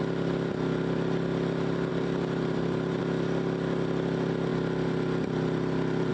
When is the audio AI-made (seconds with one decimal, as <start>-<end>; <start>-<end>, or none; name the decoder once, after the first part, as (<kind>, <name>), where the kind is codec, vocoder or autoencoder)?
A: 1.9-3.0 (vocoder, BigVGAN v2)